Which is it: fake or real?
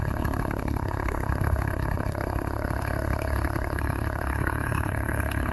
fake